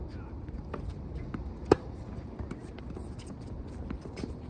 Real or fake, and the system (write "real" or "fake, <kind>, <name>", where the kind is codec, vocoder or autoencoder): real